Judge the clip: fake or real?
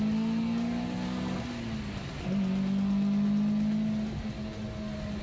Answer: real